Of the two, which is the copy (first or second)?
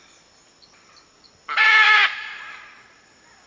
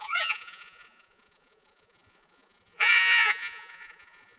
second